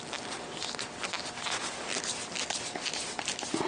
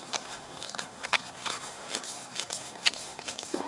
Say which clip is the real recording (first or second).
first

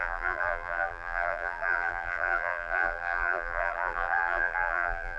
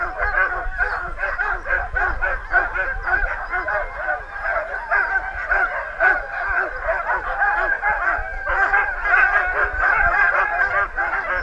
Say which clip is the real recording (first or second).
second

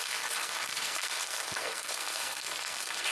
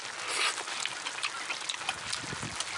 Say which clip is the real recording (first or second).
second